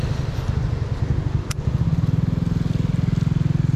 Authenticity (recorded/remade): recorded